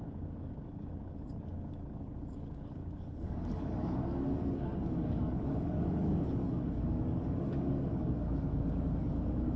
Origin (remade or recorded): remade